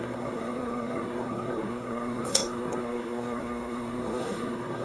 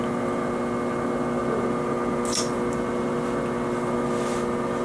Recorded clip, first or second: second